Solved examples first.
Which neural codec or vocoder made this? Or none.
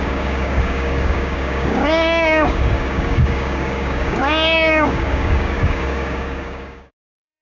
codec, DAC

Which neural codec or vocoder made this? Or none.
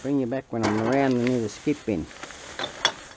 none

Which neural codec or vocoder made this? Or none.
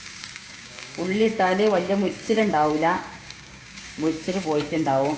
codec, DAC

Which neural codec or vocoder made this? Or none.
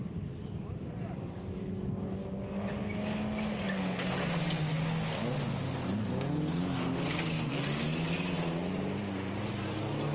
none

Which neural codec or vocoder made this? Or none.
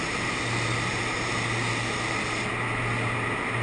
none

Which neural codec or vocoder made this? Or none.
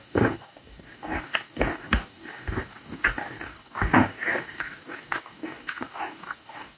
codec, DAC